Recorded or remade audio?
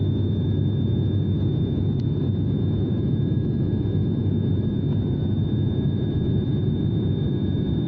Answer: remade